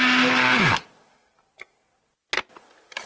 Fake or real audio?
real